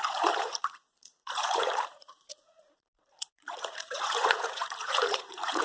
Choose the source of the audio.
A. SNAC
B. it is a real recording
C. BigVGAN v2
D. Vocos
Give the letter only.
D